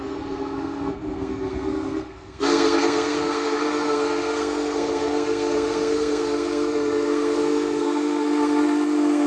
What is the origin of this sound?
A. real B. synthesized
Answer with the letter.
B